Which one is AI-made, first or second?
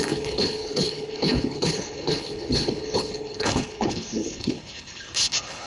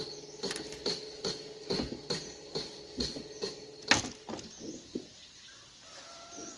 first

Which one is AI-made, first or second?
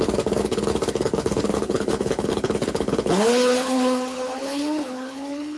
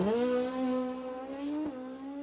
first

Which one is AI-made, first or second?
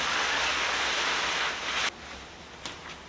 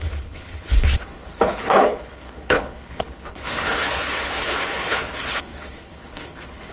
second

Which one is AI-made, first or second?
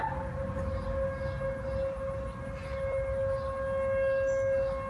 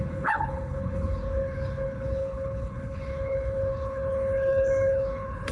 second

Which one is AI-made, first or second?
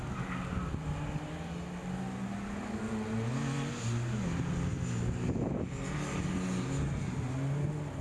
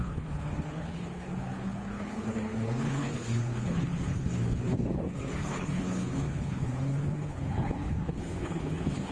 second